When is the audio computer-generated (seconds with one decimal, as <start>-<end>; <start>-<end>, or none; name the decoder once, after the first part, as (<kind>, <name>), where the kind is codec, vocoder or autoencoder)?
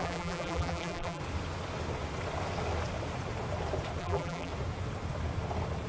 0.0-1.2 (vocoder, BigVGAN v2); 4.0-4.5